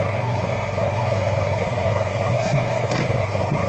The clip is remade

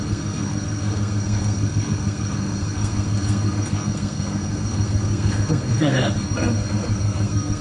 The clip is remade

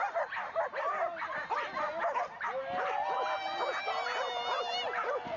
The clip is recorded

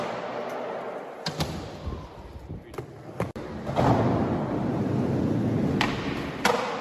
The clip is recorded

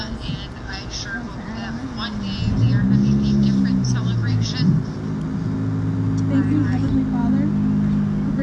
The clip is recorded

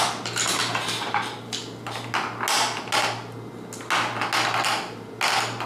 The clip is recorded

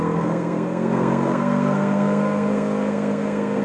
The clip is remade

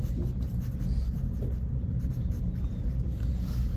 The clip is recorded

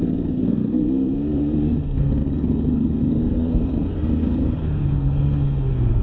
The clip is remade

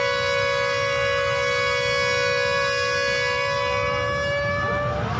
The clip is recorded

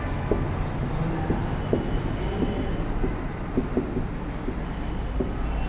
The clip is recorded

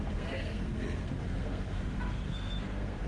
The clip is remade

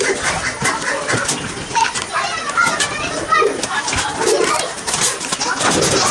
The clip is recorded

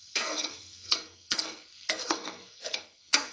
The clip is remade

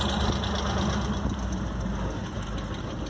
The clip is recorded